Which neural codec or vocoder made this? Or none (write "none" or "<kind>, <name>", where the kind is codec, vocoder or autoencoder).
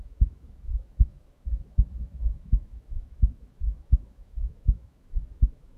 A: autoencoder, DAC-VAE